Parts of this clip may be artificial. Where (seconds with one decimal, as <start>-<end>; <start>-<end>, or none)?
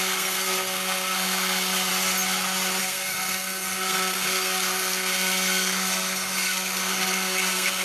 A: 0.0-1.9; 2.8-7.8